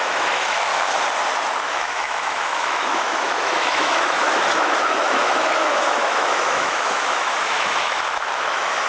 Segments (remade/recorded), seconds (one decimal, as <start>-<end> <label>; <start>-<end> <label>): 0.0-0.7 remade; 0.7-1.6 recorded; 1.6-8.9 remade